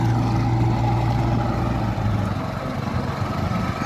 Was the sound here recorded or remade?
recorded